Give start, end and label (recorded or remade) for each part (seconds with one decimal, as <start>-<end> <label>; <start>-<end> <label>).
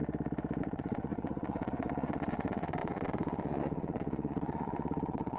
0.0-0.6 recorded; 0.6-5.4 remade